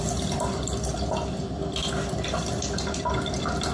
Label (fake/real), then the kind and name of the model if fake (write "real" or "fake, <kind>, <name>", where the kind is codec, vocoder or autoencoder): fake, vocoder, BigVGAN v2